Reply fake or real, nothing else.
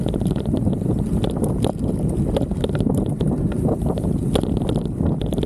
real